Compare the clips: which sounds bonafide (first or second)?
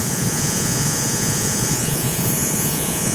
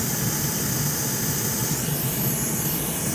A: second